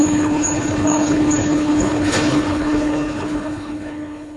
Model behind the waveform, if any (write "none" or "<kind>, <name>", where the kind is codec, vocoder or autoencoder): codec, HILCodec